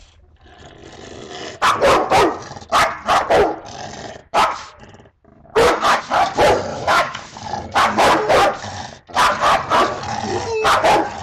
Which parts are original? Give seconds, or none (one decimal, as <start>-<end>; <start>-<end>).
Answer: 0.0-4.2; 4.8-5.3; 6.0-6.7; 7.4-11.2